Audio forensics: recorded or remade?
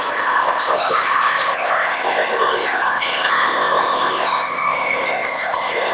remade